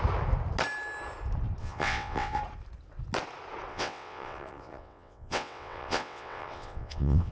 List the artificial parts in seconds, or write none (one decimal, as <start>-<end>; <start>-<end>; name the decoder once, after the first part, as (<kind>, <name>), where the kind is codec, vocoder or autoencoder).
1.6-2.4 (vocoder, WaveNeXt); 3.7-7.3